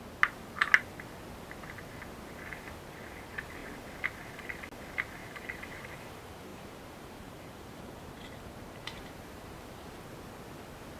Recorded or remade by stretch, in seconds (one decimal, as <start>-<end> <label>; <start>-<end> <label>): 0.0-5.2 recorded; 5.2-5.7 remade; 5.7-6.5 recorded; 6.5-9.9 remade; 9.9-11.0 recorded